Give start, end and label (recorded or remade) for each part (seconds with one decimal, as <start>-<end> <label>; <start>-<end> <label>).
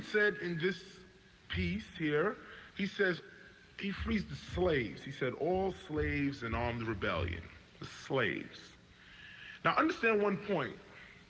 0.0-1.0 remade; 1.0-2.7 recorded; 2.7-4.5 remade; 4.5-8.0 recorded; 8.0-8.6 remade; 8.6-9.9 recorded; 9.9-11.3 remade